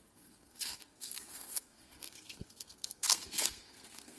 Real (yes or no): no